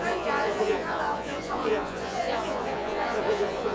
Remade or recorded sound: remade